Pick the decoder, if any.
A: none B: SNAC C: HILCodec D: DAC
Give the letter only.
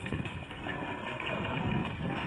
B